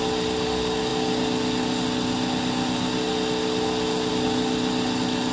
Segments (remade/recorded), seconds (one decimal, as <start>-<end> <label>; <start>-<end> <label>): 0.0-5.3 recorded